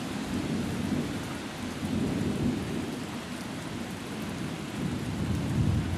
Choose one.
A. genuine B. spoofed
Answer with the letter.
A